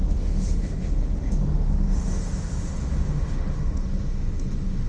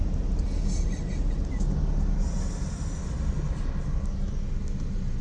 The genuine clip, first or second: second